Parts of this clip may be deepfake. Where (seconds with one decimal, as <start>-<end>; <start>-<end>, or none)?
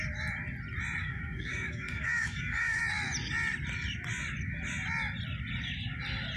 1.0-2.8